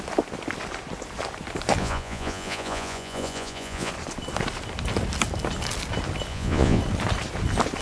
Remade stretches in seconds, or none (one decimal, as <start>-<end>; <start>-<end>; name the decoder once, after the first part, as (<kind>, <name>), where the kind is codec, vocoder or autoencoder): 1.8-3.9 (vocoder, Vocos); 6.3-6.8